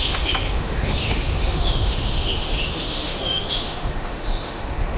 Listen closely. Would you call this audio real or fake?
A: fake